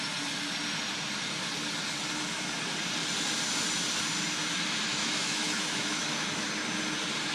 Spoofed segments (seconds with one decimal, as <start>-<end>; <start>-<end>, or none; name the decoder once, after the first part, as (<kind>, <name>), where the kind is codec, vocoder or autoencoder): 5.0-6.5 (autoencoder, DAC-VAE)